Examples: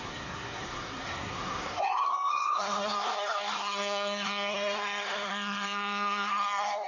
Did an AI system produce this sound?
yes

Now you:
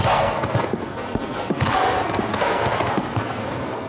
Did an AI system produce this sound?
yes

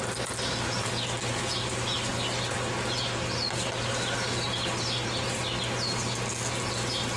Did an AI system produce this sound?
no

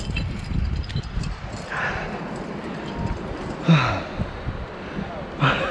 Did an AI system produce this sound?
no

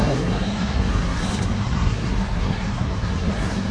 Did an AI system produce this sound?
yes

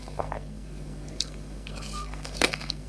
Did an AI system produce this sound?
yes